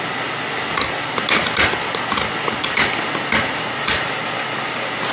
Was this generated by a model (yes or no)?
no